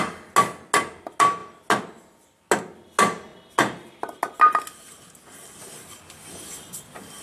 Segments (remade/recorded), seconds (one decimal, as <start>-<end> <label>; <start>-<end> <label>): 0.0-7.2 recorded